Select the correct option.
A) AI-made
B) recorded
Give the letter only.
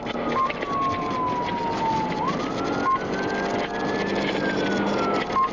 B